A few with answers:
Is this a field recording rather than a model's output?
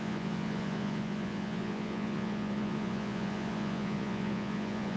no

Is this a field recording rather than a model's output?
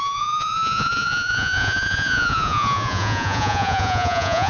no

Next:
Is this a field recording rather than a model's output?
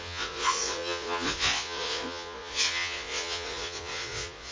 no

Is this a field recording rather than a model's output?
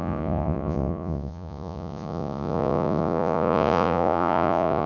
no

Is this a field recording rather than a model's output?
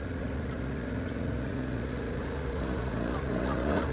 no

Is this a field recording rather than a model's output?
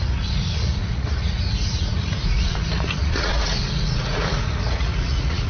no